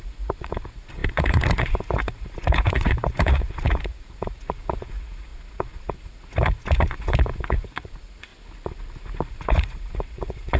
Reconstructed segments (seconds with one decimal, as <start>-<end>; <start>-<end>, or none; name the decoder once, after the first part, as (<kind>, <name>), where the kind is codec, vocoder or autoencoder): 0.0-8.3 (vocoder, Vocos); 9.3-10.6

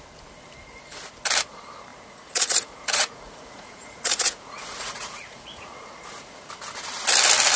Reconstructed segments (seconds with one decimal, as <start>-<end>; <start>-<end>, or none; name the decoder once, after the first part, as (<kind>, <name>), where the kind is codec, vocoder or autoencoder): 1.9-6.5 (vocoder, Vocos)

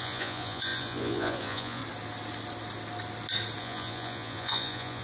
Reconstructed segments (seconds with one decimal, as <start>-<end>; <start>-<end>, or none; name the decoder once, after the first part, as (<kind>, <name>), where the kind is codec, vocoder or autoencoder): 0.0-1.8 (vocoder, Vocos); 3.6-5.0

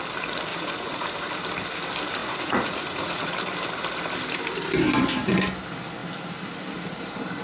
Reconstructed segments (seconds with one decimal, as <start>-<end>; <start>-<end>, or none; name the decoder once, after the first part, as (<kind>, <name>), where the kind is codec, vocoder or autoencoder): 0.5-1.3 (vocoder, Vocos); 2.2-3.3

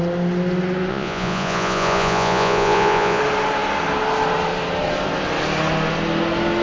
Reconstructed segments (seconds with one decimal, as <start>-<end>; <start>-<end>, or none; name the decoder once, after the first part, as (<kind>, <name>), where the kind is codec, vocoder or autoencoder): 0.9-3.2 (vocoder, Vocos)

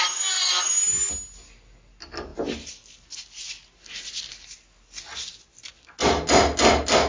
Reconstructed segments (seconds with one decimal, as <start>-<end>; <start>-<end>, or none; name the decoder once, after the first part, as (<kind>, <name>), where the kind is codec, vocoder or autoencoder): none

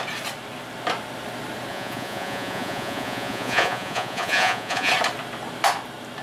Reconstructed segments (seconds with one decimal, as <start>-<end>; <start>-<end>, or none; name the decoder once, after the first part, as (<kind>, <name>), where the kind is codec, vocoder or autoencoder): 1.7-4.9 (vocoder, Vocos)